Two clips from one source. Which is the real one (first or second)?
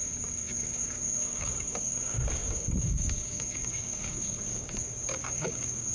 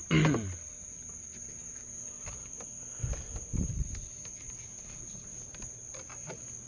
second